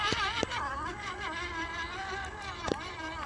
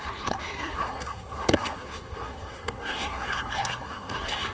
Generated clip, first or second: second